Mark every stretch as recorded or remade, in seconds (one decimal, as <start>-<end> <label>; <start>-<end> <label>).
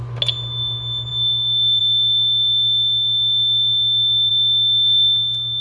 0.0-5.6 recorded